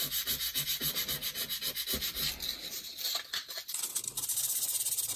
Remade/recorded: recorded